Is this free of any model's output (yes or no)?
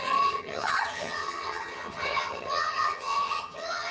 no